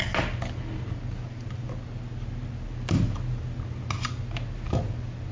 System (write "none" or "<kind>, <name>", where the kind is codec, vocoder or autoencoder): none